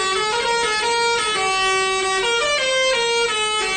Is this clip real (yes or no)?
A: yes